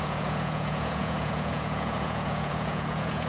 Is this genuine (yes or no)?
no